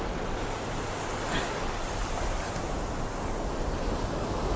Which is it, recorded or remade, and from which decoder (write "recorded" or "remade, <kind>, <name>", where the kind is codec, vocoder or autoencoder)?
recorded